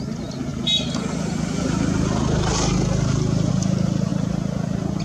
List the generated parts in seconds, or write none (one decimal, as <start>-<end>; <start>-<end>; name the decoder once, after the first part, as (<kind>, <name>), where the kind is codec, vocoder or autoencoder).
none